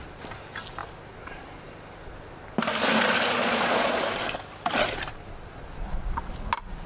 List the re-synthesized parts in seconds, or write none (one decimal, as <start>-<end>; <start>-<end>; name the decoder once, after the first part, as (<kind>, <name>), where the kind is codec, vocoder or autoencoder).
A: 3.4-4.0 (vocoder, Vocos); 5.1-6.3